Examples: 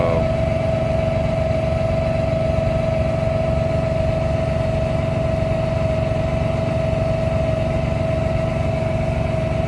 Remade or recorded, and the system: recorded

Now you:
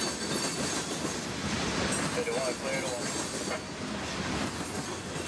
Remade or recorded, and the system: recorded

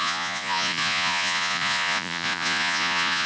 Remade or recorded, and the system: remade, vocoder, Vocos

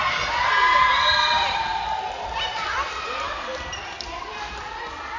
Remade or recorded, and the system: recorded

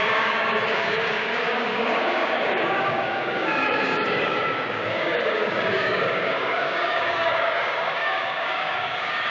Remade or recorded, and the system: remade, codec, DAC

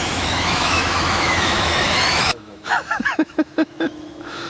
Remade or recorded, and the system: remade, autoencoder, DAC-VAE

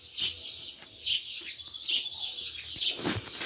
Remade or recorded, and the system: recorded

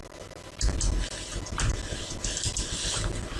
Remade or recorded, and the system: recorded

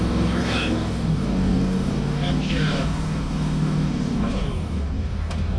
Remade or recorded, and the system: remade, codec, DAC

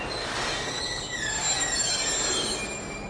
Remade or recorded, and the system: recorded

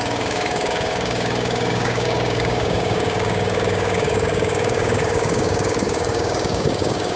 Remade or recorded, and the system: remade, codec, DAC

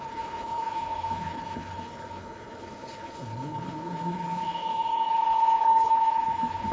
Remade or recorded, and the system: remade, codec, HILCodec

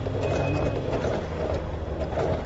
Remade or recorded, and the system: remade, vocoder, BigVGAN v2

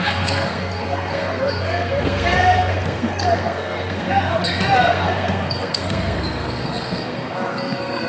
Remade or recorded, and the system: remade, codec, SNAC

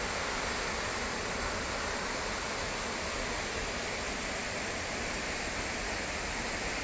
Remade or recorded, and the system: recorded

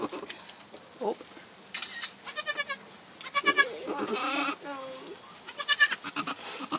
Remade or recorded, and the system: recorded